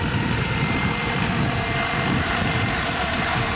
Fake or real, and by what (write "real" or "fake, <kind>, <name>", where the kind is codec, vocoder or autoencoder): fake, vocoder, BigVGAN v2